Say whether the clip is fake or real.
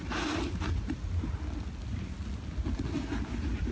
real